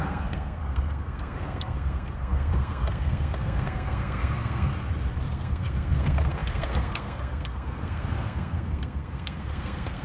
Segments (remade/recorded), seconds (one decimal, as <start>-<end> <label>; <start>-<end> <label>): 0.0-4.7 remade; 4.7-5.3 recorded; 5.3-10.0 remade